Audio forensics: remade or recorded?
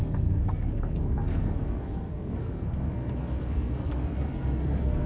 remade